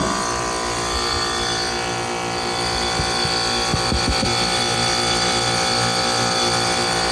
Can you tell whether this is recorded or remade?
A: recorded